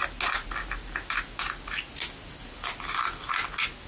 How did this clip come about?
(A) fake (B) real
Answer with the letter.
B